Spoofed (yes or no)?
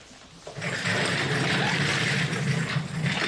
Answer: no